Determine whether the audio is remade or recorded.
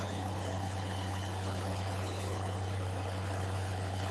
remade